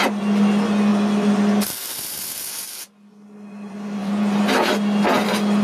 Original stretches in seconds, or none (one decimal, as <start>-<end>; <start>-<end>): 0.0-4.0; 4.7-5.6